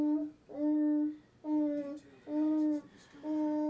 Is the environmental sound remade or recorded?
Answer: recorded